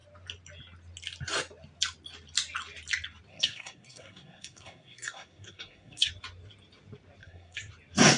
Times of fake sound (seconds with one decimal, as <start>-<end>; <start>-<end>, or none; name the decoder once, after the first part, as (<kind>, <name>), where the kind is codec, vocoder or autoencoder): 3.3-6.1 (codec, SNAC); 7.2-7.7